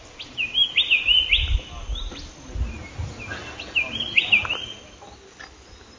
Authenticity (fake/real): real